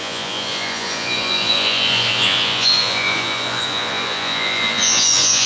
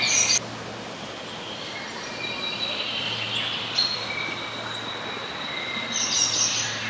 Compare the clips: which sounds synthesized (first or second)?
first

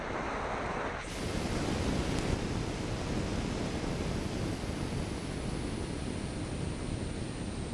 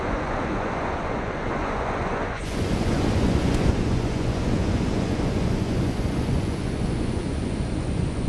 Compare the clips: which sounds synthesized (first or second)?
second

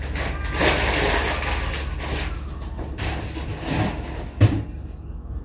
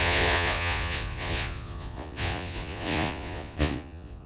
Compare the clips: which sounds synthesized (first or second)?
second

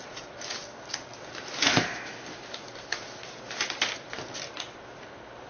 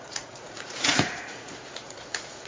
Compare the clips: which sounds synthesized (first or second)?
second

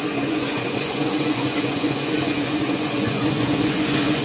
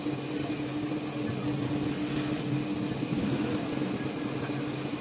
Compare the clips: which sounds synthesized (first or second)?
first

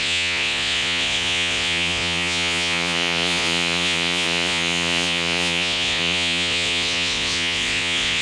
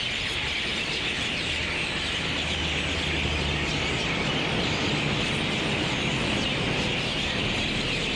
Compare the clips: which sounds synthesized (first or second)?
first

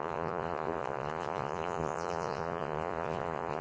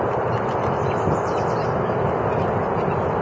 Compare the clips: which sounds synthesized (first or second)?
first